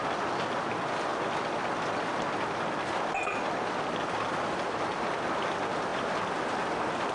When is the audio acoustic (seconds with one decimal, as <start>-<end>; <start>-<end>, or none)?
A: 0.0-7.1